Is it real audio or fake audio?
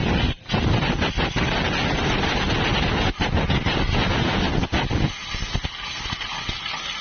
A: real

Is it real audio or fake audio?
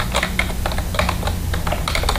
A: real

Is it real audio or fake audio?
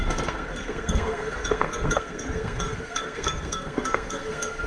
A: fake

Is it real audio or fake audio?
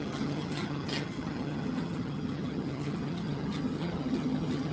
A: fake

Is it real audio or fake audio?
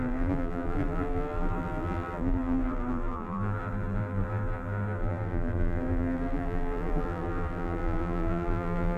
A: fake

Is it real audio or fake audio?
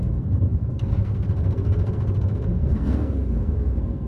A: fake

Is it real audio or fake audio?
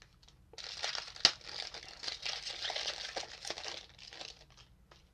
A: real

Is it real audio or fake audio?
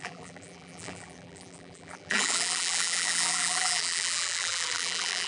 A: fake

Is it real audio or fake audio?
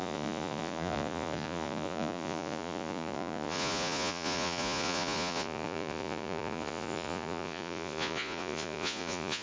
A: fake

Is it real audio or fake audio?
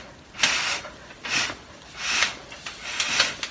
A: real